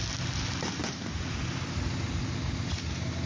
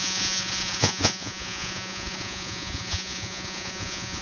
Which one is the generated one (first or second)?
second